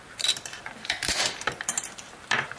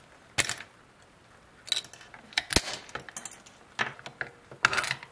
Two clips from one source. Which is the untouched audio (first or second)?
second